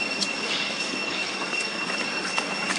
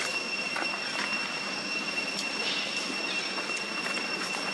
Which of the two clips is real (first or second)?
second